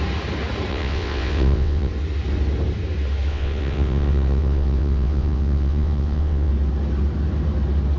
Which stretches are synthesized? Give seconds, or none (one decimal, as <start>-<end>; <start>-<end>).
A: 0.7-1.9; 3.3-6.5

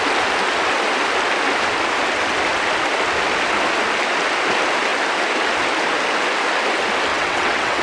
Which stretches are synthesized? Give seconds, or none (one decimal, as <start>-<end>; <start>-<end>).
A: 7.1-7.8

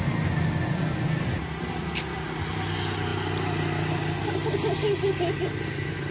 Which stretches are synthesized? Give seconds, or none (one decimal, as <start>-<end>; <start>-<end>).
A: none

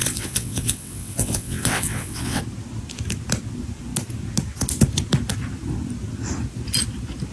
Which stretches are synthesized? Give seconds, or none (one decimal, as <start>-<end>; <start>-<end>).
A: 0.0-2.4